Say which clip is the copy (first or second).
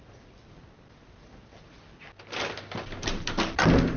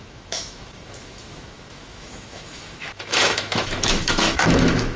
second